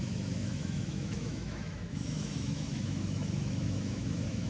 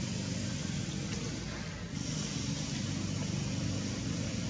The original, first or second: second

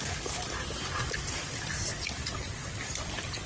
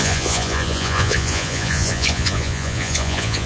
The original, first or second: first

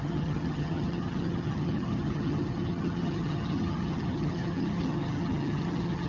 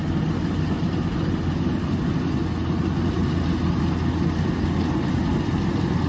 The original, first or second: second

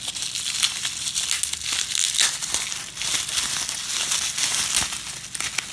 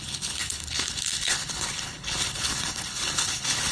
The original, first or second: first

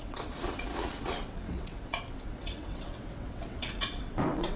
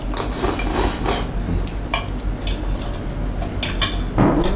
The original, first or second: second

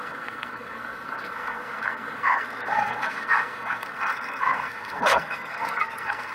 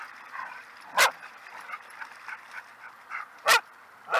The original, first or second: second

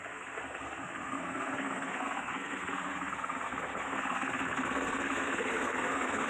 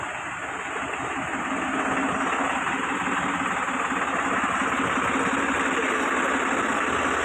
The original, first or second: second